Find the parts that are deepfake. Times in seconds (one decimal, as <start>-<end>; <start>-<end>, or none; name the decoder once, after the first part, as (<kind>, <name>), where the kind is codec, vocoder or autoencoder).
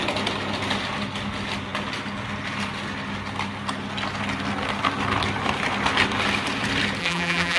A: 7.0-7.6 (vocoder, BigVGAN v2)